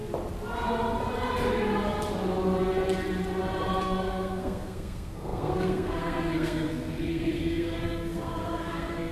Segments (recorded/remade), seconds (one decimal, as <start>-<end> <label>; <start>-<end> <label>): 0.0-3.8 recorded; 3.8-9.1 remade

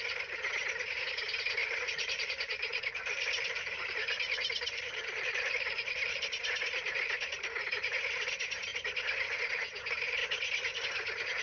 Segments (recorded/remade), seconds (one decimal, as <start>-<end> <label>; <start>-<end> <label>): 0.0-1.6 recorded; 1.6-6.3 remade; 6.3-11.4 recorded

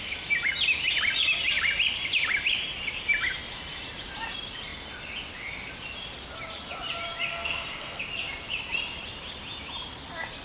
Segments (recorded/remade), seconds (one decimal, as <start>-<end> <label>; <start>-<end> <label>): 0.0-7.3 recorded; 7.3-8.0 remade; 8.0-10.4 recorded

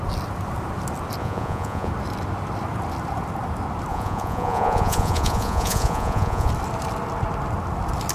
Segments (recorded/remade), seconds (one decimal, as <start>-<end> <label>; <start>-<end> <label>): 0.0-1.2 recorded; 1.2-1.9 remade; 1.9-3.9 recorded; 3.9-6.5 remade; 6.5-8.1 recorded

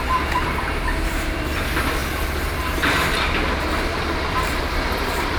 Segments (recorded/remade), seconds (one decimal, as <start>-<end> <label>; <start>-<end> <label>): 0.0-5.4 remade

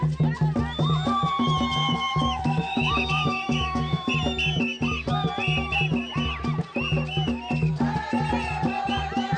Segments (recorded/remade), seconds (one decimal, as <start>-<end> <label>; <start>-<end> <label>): 0.0-1.8 recorded; 1.8-4.1 remade; 4.1-9.4 recorded

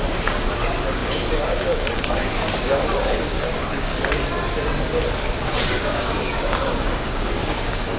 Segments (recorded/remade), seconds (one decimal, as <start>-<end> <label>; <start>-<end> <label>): 0.0-3.9 remade; 3.9-5.6 recorded; 5.6-8.0 remade

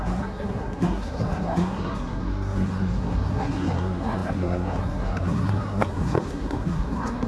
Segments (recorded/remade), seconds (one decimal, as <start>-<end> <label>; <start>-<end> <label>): 0.0-7.3 remade